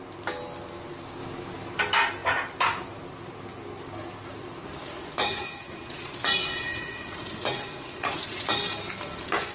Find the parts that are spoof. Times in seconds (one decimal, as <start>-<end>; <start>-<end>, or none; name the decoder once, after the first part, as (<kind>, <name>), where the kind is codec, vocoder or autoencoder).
4.8-8.6 (vocoder, Vocos)